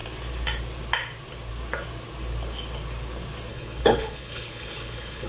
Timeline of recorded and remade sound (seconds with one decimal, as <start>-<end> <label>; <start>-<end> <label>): 0.0-3.5 recorded; 3.5-5.3 remade